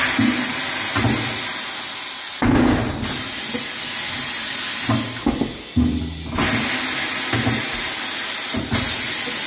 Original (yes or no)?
yes